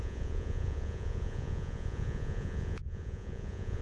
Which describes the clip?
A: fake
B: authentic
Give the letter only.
A